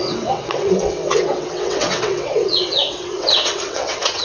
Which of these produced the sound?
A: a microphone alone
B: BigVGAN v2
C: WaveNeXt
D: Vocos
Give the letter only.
C